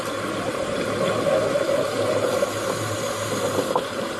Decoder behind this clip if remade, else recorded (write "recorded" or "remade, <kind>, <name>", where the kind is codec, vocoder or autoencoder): remade, vocoder, BigVGAN v2